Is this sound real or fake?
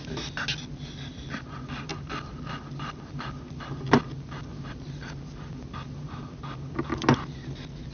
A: real